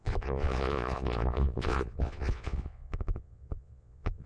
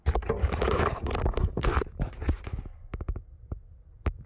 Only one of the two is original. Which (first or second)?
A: second